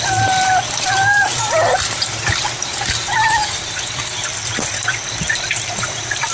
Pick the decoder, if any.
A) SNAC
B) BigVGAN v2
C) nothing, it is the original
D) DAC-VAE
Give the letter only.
B